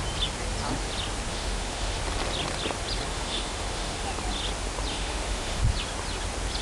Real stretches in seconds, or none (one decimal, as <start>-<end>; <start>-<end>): 0.0-1.3; 2.0-3.1; 4.1-4.9; 5.6-6.6